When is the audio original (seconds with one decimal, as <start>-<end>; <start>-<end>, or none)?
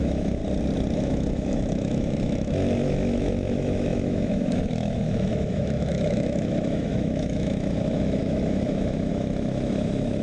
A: 0.4-1.0